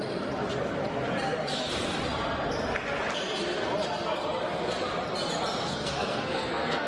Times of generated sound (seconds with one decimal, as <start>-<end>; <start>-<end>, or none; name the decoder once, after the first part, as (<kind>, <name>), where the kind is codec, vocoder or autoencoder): 5.6-6.9 (codec, SNAC)